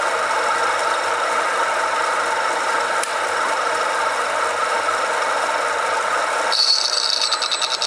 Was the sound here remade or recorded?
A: recorded